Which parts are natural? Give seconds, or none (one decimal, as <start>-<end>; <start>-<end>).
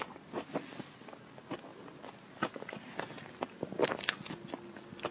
0.0-5.1